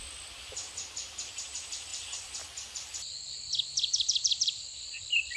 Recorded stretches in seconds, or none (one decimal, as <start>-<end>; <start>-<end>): 0.0-1.9